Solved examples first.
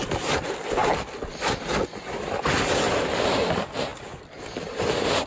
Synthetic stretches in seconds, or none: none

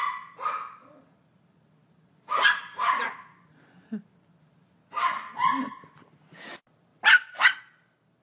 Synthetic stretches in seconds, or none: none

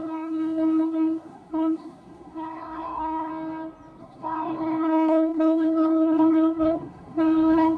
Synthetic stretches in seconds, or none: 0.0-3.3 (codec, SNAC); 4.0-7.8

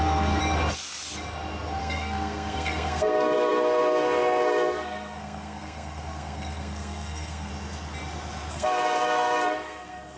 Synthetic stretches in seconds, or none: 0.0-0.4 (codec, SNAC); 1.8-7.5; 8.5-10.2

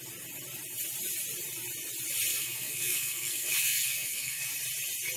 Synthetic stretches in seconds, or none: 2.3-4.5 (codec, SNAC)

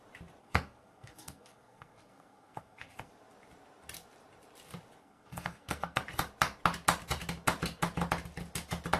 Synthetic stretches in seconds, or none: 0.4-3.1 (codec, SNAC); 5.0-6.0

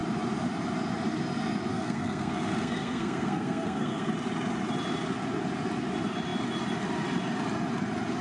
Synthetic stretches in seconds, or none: 1.7-4.1 (codec, SNAC)

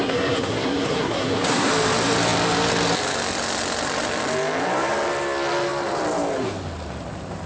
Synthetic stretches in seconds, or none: 0.0-1.7 (codec, SNAC)